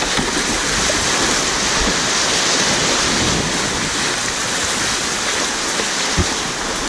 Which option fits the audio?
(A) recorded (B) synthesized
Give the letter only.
A